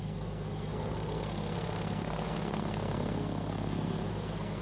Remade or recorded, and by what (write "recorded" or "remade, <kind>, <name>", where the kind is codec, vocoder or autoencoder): remade, codec, SNAC